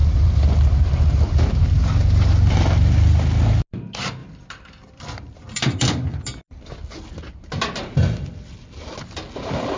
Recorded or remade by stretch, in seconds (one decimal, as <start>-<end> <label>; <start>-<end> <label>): 0.0-1.7 remade; 1.7-4.2 recorded; 4.2-6.2 remade; 6.2-9.8 recorded